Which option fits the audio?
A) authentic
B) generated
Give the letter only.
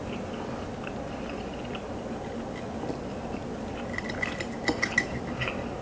A